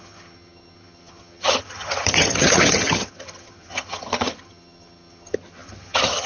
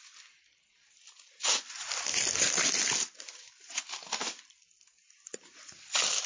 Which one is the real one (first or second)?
second